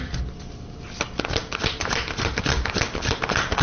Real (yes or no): yes